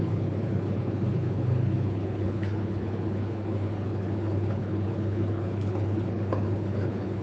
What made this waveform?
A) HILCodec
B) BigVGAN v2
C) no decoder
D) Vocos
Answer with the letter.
A